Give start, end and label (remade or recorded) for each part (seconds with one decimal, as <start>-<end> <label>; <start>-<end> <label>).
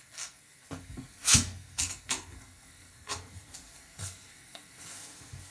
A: 0.0-5.5 remade